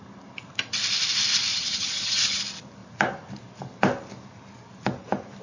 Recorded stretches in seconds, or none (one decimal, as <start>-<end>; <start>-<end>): 0.0-1.5; 2.4-5.4